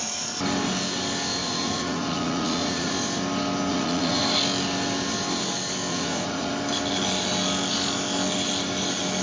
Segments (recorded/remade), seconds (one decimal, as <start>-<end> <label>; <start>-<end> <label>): 0.0-1.4 recorded; 1.4-2.9 remade; 2.9-3.7 recorded; 3.7-4.2 remade; 4.2-5.9 recorded; 5.9-6.5 remade; 6.5-9.2 recorded